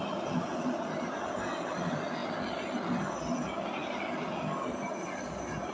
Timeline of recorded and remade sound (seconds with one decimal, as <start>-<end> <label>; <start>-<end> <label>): 0.0-5.7 recorded